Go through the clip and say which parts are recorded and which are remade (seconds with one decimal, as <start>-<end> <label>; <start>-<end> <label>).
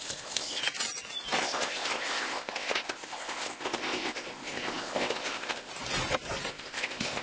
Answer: 0.0-0.6 remade; 0.6-1.4 recorded; 1.4-5.7 remade; 5.7-6.5 recorded; 6.5-7.2 remade